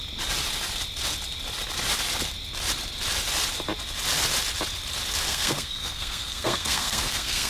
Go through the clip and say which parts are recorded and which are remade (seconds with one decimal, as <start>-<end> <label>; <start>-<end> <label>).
0.0-5.3 recorded; 5.3-7.5 remade